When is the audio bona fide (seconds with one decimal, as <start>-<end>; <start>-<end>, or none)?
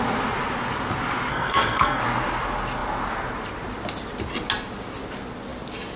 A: 0.0-1.3; 2.0-6.0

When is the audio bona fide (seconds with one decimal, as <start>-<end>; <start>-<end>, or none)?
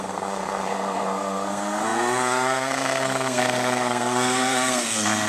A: none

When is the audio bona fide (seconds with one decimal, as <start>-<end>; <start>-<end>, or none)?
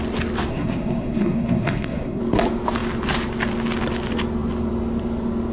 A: 0.0-0.5; 2.2-5.5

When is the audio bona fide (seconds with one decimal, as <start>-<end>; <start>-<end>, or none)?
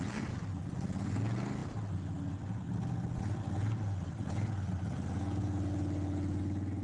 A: 0.0-6.8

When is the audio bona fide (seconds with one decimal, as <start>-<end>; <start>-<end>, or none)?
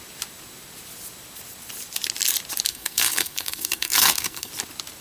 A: 0.0-2.7; 4.5-5.0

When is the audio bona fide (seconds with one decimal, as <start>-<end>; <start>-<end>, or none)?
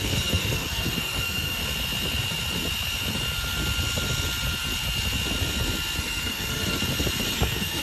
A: 1.6-6.0; 6.8-7.3